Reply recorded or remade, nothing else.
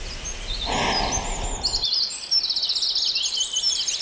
recorded